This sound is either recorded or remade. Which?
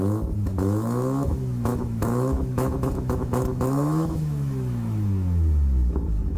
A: remade